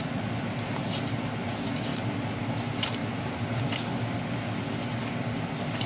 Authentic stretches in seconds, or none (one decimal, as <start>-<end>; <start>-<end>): 0.0-5.9